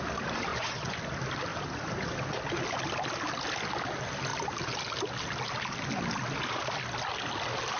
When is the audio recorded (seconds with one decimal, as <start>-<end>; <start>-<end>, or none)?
0.0-0.5; 1.0-7.8